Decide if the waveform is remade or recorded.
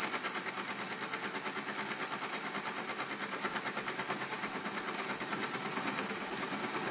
recorded